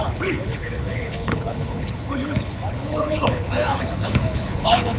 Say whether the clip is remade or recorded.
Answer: remade